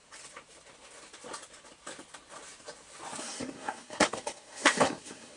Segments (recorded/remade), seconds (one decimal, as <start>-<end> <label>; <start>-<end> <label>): 0.0-3.2 recorded; 3.2-5.4 remade